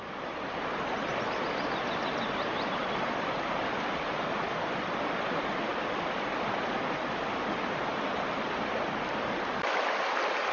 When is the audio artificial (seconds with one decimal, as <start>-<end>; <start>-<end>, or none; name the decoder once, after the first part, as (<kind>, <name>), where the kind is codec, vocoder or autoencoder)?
5.7-9.5 (vocoder, BigVGAN v2)